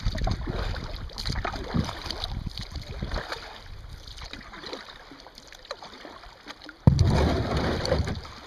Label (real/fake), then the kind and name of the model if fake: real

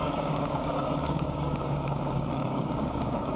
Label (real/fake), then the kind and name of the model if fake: fake, codec, DAC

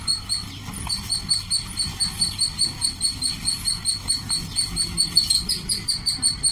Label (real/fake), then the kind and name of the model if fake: real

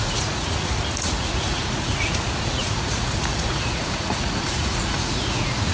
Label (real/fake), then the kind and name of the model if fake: fake, vocoder, Vocos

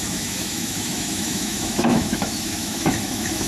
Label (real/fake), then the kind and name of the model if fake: fake, autoencoder, DAC-VAE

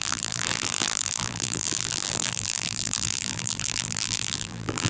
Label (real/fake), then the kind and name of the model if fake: fake, vocoder, BigVGAN v2